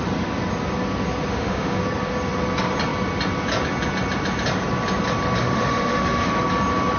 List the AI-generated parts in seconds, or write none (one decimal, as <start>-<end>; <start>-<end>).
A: 1.3-1.8; 5.4-6.3